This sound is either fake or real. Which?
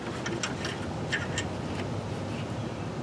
real